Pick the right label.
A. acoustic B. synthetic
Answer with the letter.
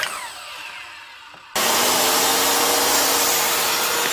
A